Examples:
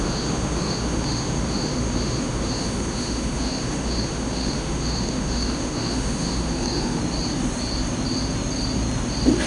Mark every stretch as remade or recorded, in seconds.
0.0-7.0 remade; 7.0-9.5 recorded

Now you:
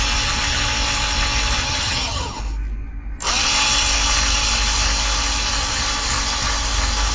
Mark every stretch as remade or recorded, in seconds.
0.0-1.6 recorded; 1.6-2.4 remade; 2.4-7.1 recorded

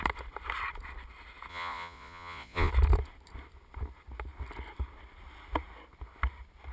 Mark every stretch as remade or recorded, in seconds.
0.0-1.5 recorded; 1.5-2.7 remade; 2.7-6.7 recorded

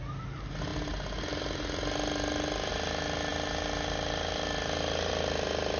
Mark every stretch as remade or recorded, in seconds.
0.0-5.8 recorded

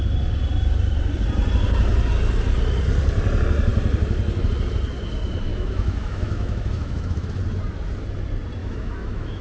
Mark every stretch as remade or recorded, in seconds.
0.0-5.5 recorded; 5.5-7.4 remade; 7.4-8.6 recorded; 8.6-9.4 remade